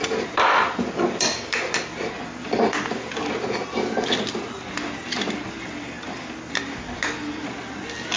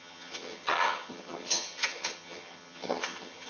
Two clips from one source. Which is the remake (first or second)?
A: second